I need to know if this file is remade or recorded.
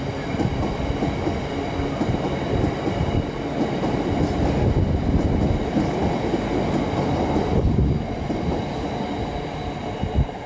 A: recorded